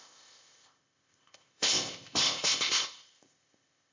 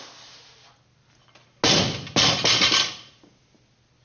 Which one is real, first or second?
second